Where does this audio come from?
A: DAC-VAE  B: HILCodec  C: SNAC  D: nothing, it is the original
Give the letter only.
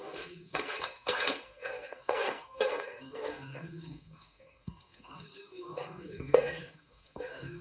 C